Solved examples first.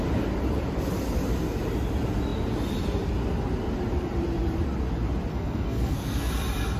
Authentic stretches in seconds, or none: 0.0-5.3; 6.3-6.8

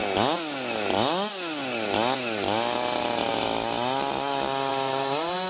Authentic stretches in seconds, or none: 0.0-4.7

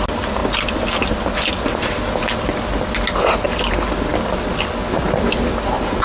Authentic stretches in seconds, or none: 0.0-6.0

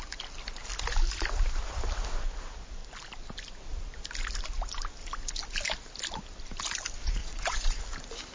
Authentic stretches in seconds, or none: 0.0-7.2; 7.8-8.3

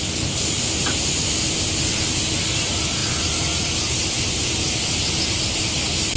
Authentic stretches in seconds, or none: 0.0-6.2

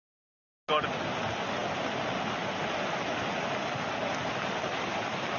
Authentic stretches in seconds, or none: 0.0-5.4

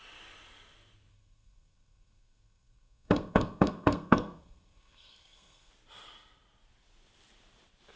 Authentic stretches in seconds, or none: 0.0-1.1; 5.7-8.0